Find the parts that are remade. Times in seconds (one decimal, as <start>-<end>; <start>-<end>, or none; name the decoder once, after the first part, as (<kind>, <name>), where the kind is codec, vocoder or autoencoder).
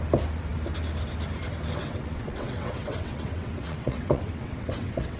1.8-5.2 (vocoder, WaveNeXt)